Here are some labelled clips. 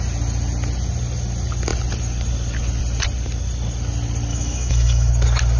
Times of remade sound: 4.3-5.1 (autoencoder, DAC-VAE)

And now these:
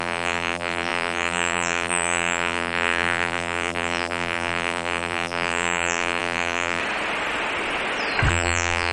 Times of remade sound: 0.0-6.8 (vocoder, BigVGAN v2); 8.3-8.9

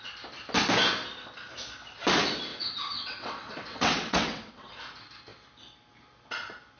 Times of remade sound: 2.5-4.7 (vocoder, WaveNeXt)

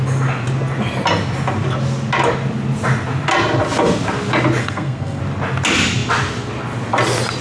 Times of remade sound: 4.6-5.2 (codec, SNAC)

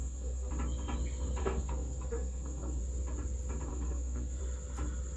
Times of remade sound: 0.0-0.5 (codec, SNAC); 1.4-2.8; 3.7-4.4

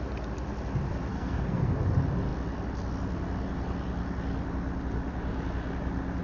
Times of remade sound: 1.1-1.8 (codec, SNAC)